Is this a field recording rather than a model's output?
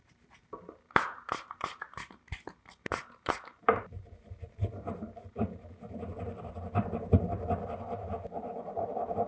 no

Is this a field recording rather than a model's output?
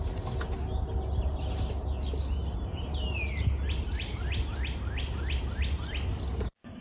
yes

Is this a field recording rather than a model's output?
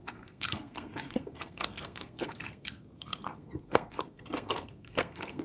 no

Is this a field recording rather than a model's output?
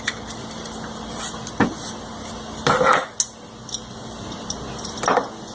yes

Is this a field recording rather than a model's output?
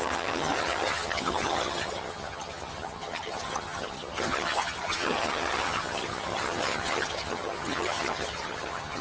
no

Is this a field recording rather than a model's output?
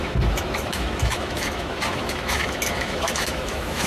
no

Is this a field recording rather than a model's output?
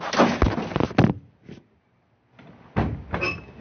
yes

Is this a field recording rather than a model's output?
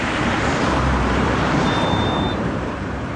no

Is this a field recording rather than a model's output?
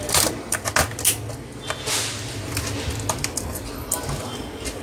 yes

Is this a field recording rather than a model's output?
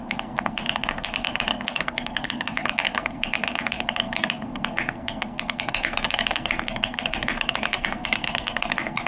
no